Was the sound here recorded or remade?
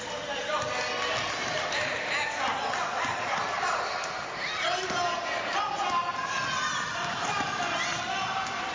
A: recorded